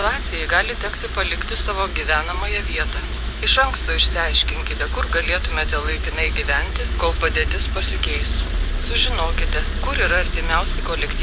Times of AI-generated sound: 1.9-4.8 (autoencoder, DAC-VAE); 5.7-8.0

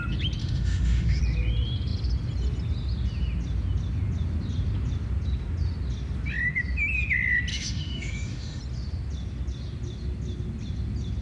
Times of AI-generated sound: 0.4-1.2 (autoencoder, DAC-VAE); 7.5-8.6

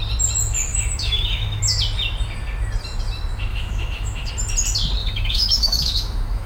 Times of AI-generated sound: 0.7-1.6 (autoencoder, DAC-VAE); 3.5-4.3; 5.0-6.5

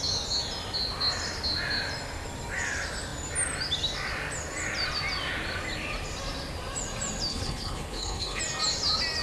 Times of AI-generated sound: 7.3-8.4 (codec, HILCodec)